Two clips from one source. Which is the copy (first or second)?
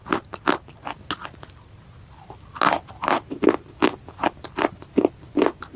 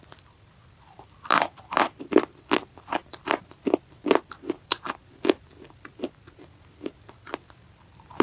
second